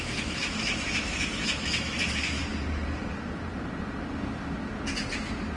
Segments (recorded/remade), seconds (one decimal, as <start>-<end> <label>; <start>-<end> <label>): 0.0-2.4 remade; 2.4-5.6 recorded